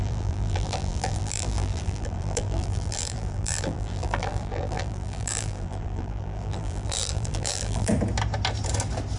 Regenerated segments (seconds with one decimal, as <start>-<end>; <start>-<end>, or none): 0.0-7.9